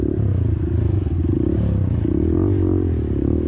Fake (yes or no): no